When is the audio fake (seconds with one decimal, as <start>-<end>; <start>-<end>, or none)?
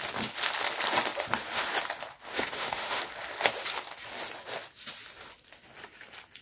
2.3-3.0